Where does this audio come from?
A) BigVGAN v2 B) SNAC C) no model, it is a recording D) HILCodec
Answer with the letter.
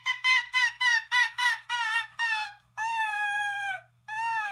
B